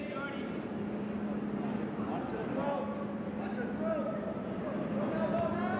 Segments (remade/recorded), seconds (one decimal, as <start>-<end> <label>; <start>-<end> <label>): 0.0-5.8 recorded